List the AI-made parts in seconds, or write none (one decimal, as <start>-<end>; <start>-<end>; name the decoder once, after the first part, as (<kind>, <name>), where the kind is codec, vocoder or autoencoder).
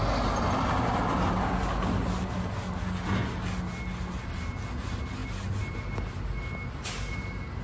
none